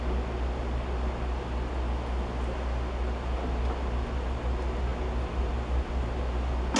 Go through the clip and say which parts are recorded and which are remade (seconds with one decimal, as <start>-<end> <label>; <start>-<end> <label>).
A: 0.0-6.8 recorded